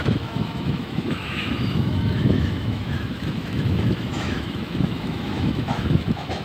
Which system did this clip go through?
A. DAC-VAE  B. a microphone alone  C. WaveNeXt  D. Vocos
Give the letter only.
A